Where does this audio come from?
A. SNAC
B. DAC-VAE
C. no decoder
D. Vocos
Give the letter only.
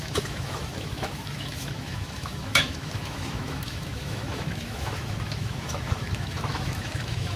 B